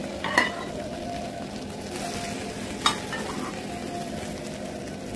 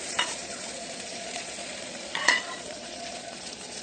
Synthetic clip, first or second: second